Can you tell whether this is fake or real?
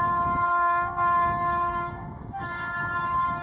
fake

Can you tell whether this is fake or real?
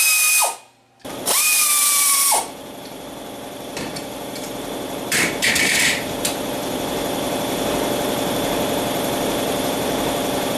fake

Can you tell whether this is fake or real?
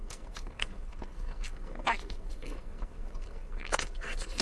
fake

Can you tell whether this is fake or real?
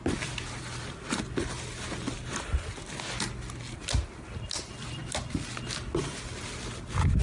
real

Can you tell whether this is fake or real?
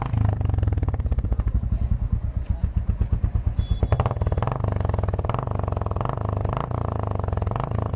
real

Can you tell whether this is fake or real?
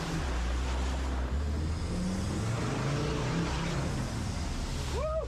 real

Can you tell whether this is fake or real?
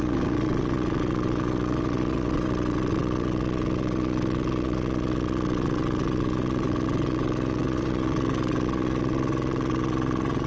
fake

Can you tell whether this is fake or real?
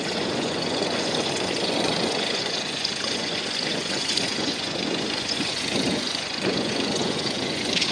fake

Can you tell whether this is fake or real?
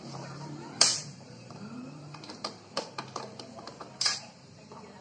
fake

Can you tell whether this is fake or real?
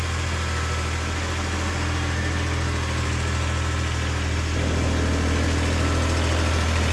real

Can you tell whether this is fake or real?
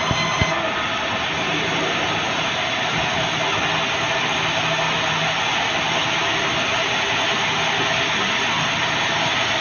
real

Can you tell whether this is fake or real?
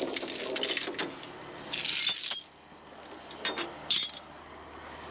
real